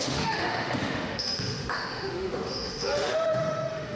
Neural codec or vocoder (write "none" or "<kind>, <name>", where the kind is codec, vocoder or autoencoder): autoencoder, DAC-VAE